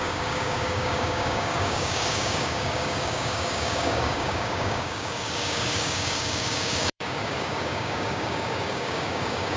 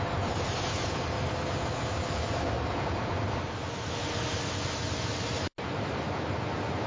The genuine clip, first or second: second